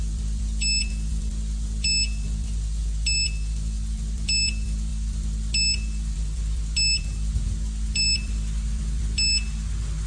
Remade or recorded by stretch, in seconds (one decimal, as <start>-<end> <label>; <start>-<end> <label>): 0.0-10.1 recorded